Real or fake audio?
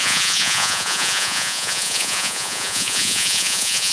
fake